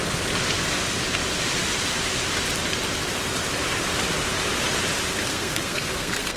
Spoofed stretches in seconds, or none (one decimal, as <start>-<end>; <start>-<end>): 5.3-6.4